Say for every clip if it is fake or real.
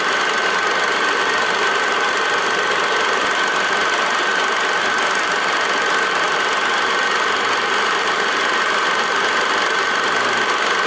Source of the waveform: real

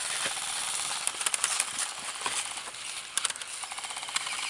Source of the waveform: real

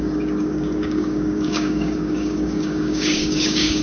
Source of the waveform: fake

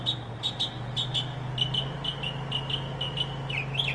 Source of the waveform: real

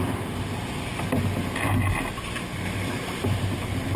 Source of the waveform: real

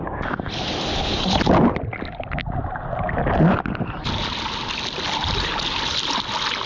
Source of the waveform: real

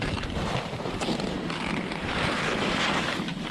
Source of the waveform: fake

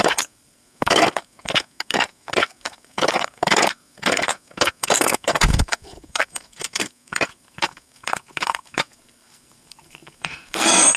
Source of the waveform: fake